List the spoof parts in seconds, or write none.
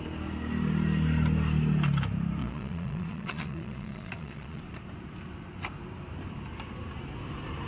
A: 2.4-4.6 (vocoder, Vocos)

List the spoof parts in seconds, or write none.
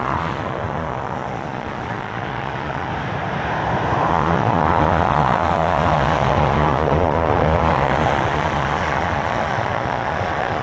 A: 0.0-2.9 (vocoder, Vocos); 4.1-10.6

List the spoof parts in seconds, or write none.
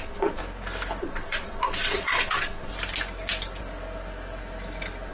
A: 0.0-0.4 (vocoder, Vocos); 1.0-2.7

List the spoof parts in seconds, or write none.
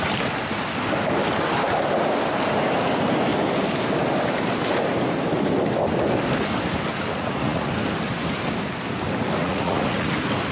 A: 7.1-7.7 (vocoder, Vocos); 9.4-10.1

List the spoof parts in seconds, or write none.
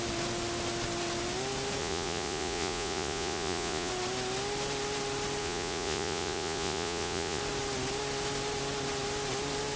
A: 1.8-3.9 (vocoder, Vocos); 5.4-7.4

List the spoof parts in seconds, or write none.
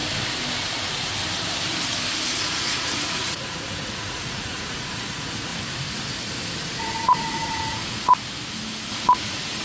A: 2.4-5.5 (vocoder, Vocos); 6.8-8.1; 8.9-9.6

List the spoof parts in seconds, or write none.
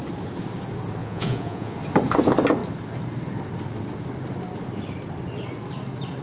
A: 1.0-1.8 (vocoder, Vocos)